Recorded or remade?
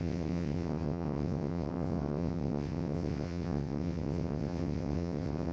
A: remade